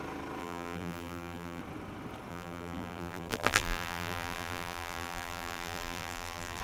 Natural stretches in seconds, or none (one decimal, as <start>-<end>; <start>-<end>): 0.0-0.4; 1.6-2.3